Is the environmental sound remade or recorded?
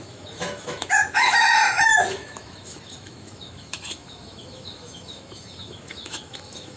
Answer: remade